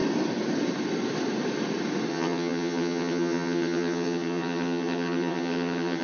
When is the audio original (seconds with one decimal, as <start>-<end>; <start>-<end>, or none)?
0.0-2.1